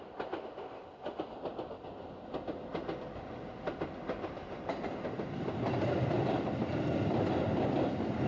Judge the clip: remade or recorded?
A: recorded